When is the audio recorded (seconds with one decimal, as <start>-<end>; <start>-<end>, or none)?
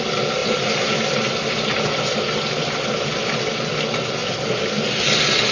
0.0-5.5